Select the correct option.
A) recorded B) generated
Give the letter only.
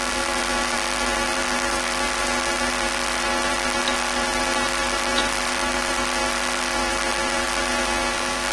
B